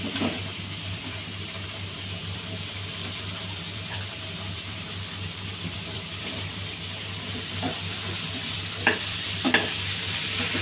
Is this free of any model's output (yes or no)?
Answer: no